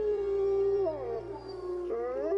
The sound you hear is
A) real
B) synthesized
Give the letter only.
B